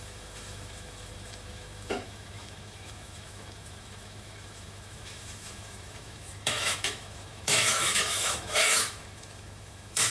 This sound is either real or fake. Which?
fake